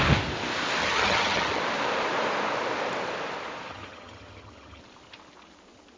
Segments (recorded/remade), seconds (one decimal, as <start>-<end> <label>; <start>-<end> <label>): 0.0-0.8 recorded; 0.8-1.6 remade; 1.6-3.7 recorded; 3.7-4.8 remade; 4.8-6.0 recorded